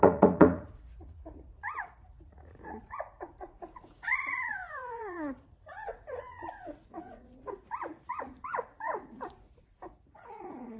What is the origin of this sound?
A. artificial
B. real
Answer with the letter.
A